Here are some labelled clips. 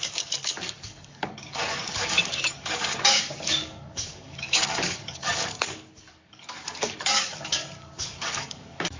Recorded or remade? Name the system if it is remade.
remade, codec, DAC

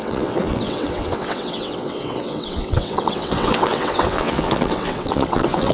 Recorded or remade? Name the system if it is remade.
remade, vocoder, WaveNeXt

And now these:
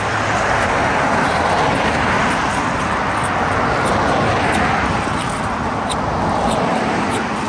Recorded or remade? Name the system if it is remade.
recorded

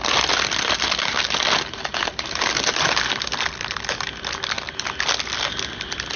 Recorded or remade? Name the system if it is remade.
recorded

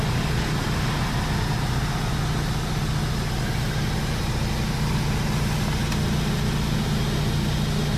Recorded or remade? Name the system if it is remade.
recorded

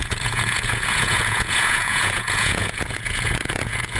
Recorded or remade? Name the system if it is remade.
remade, vocoder, Vocos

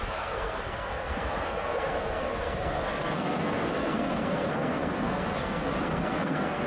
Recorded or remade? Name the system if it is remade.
remade, codec, SNAC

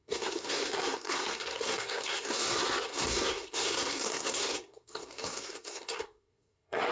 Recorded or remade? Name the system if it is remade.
remade, codec, SNAC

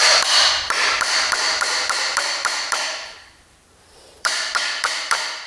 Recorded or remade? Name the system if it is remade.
remade, vocoder, BigVGAN v2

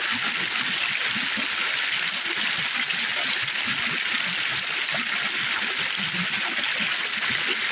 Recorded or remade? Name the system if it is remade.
recorded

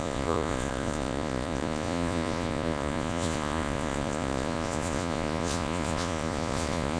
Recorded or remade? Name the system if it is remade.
remade, vocoder, Vocos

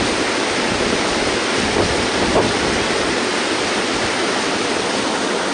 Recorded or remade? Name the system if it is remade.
recorded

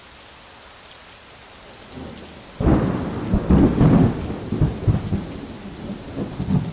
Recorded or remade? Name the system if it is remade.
recorded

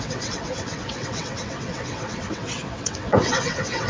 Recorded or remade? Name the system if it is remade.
remade, vocoder, WaveNeXt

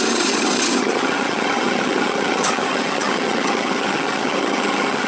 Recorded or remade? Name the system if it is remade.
remade, vocoder, HiFi-GAN